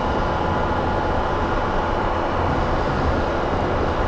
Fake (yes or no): no